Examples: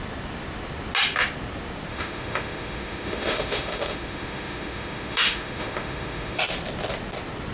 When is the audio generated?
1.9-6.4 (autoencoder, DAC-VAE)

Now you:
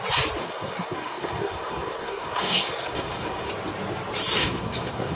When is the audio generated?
0.4-3.5 (codec, SNAC); 4.4-5.2

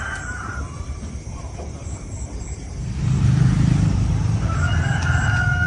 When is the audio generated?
0.0-4.7 (vocoder, BigVGAN v2)

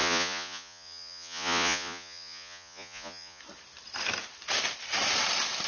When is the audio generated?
0.0-3.4 (vocoder, Vocos)